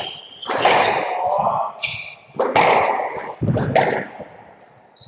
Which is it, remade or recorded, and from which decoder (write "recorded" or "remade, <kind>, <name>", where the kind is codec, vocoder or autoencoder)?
recorded